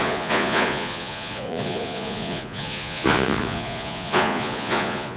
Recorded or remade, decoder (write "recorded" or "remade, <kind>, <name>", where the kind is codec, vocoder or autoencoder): remade, vocoder, Vocos